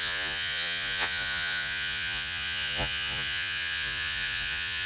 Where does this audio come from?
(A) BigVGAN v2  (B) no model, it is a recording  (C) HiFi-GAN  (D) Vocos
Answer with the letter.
D